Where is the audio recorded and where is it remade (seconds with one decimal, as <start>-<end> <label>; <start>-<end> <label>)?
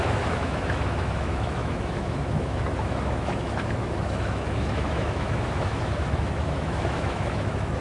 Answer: 0.0-7.8 remade